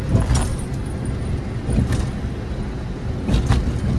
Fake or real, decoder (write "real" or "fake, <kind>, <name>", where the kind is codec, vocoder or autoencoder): real